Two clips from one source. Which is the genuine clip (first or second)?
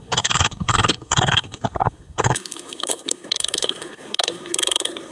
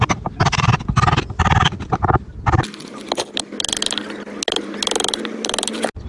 second